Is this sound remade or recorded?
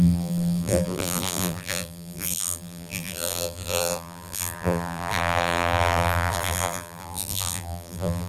remade